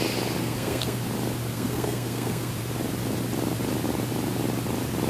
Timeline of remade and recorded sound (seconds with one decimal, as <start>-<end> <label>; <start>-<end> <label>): 0.0-0.4 recorded; 0.4-1.0 remade; 1.0-1.5 recorded; 1.5-2.5 remade; 2.5-5.1 recorded